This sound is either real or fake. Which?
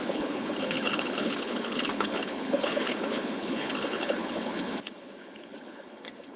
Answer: fake